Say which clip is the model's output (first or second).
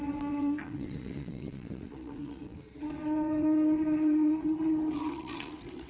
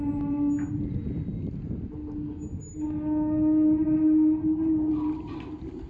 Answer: first